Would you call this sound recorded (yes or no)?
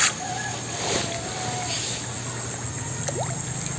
yes